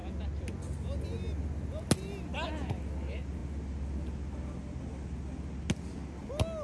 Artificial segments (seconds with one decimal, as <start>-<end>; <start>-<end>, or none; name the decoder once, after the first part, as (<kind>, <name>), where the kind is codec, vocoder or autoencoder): none